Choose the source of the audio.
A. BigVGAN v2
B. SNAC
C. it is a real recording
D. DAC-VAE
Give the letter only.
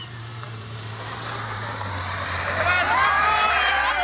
A